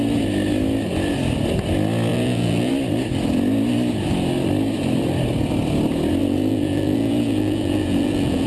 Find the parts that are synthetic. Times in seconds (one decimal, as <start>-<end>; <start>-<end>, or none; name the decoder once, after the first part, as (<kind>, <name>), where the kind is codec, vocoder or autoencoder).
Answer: 2.1-2.7 (vocoder, Vocos); 6.2-8.5